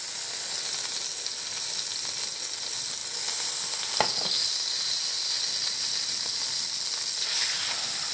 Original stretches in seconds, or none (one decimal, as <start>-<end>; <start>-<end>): 0.0-8.1